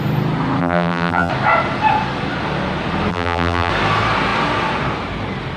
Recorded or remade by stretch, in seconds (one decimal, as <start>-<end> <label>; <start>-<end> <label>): 0.0-0.6 recorded; 0.6-1.3 remade; 1.3-3.1 recorded; 3.1-3.7 remade; 3.7-5.6 recorded